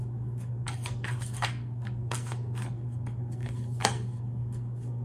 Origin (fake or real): fake